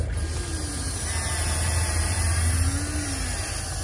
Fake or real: real